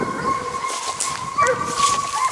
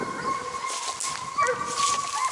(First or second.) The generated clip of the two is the first